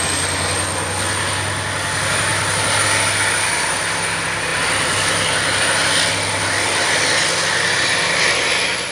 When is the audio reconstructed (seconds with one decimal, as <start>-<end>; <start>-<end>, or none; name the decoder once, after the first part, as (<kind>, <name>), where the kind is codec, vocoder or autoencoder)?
2.3-3.3 (vocoder, BigVGAN v2); 4.5-6.1